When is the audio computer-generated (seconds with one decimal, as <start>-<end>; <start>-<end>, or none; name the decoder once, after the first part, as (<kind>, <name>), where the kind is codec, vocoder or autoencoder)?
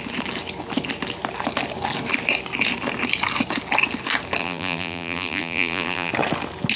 4.4-6.1 (vocoder, BigVGAN v2)